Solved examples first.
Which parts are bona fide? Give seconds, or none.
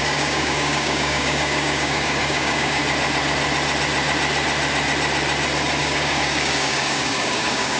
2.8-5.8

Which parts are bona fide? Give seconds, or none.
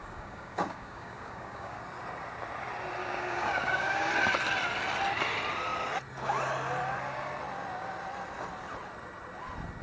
1.8-3.0; 4.1-9.8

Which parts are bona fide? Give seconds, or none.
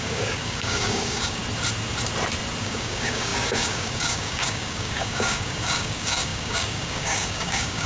1.4-2.6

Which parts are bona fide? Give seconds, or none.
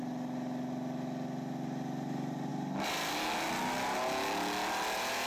0.0-5.3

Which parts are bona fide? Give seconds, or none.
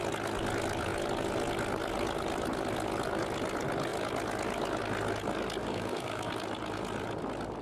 0.0-5.6; 6.3-7.6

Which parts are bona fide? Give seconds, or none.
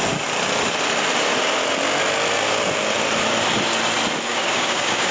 0.0-4.3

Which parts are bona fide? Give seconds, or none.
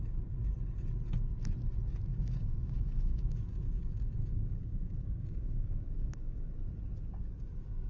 0.0-2.1; 6.5-7.9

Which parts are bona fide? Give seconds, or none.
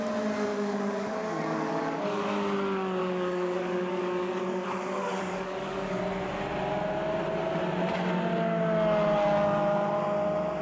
0.0-0.5; 2.2-3.0; 6.0-10.6